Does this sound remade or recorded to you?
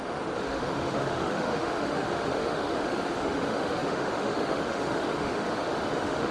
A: remade